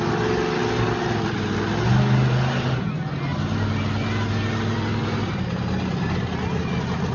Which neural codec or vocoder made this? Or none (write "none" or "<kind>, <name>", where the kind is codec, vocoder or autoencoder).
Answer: none